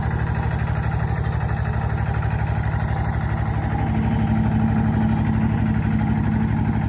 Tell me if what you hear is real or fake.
real